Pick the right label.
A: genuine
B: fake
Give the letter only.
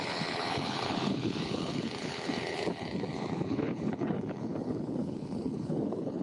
B